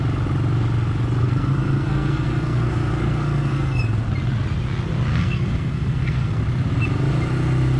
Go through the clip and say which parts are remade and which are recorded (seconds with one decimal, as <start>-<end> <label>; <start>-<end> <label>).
0.0-1.2 recorded; 1.2-3.8 remade; 3.8-5.1 recorded; 5.1-6.4 remade; 6.4-7.8 recorded